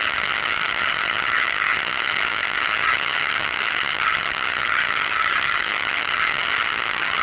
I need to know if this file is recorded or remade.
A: remade